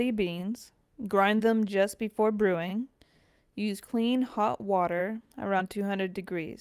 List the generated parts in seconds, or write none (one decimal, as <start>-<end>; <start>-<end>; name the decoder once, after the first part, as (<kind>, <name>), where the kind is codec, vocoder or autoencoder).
0.4-1.4 (autoencoder, DAC-VAE); 2.7-3.8; 5.0-5.6